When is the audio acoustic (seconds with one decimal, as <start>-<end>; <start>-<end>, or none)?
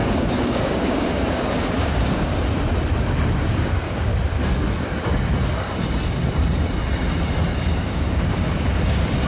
2.3-3.4; 4.1-7.6